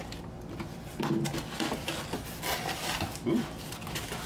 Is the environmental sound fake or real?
real